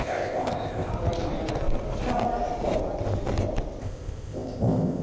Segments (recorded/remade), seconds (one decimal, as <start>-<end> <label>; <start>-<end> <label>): 0.0-0.9 remade; 0.9-3.8 recorded; 3.8-5.0 remade